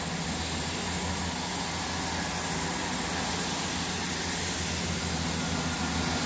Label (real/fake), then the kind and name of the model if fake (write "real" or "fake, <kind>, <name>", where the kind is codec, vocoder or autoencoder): real